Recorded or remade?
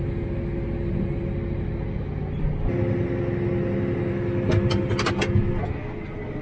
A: recorded